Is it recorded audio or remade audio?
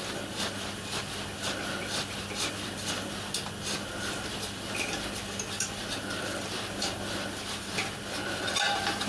recorded